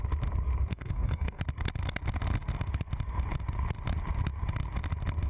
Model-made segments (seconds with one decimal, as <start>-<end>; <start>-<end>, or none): 0.7-1.4